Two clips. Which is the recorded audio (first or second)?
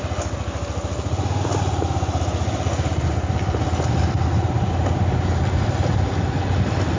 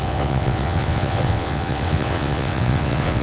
first